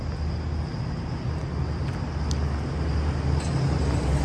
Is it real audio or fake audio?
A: real